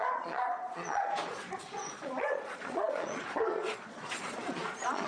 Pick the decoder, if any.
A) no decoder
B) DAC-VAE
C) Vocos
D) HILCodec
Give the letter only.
C